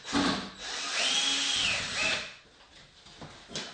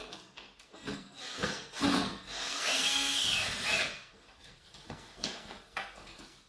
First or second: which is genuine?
first